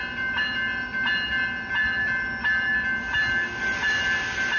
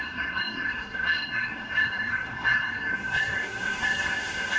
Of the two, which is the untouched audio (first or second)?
first